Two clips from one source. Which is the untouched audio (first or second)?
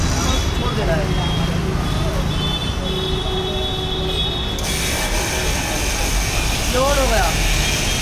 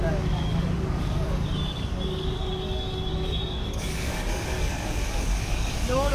first